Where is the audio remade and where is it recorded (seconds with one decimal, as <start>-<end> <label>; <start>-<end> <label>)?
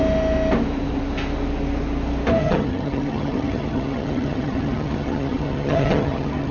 0.0-2.4 recorded; 2.4-6.5 remade